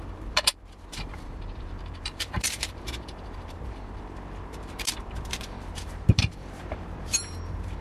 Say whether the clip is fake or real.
fake